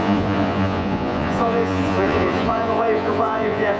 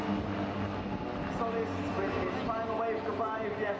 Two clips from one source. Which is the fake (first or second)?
first